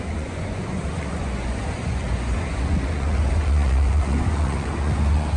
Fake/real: fake